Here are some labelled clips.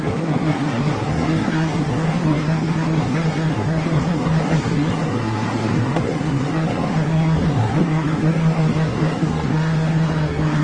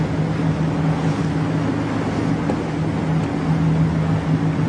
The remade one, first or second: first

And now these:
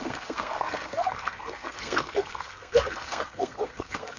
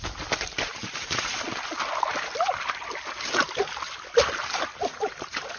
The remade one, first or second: first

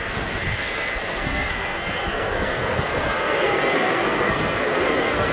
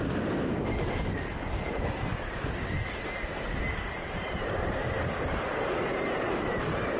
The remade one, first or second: first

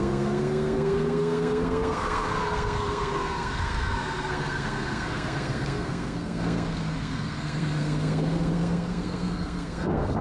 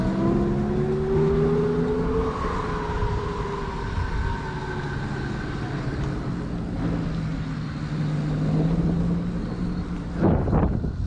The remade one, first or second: first